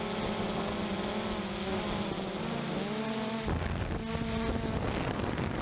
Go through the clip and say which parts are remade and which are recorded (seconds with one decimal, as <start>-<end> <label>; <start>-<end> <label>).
0.0-5.6 recorded